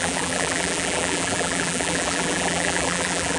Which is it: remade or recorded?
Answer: remade